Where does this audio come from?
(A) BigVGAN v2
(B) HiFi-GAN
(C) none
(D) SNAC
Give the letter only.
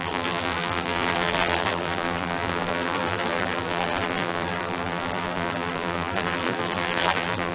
A